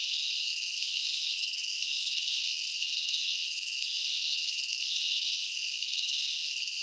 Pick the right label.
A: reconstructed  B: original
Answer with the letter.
A